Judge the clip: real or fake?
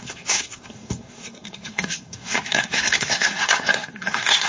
fake